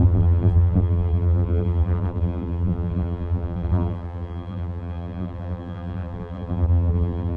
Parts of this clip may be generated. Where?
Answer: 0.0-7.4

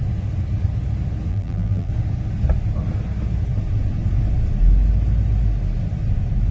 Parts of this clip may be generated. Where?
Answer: 1.3-1.9